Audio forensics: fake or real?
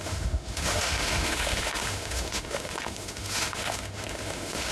fake